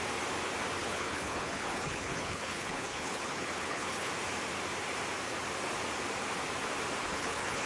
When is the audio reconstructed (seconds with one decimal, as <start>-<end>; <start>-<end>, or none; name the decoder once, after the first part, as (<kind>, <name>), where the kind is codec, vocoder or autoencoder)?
0.8-4.1 (codec, HILCodec); 7.0-7.7